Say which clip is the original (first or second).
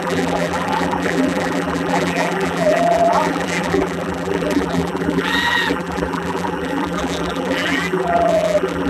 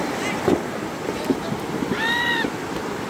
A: second